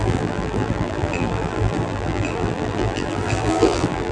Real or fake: fake